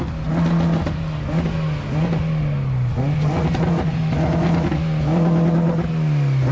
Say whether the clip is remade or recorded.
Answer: recorded